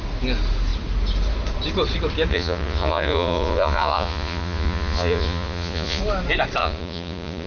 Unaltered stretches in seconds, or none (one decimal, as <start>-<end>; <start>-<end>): 0.0-2.3; 6.0-6.6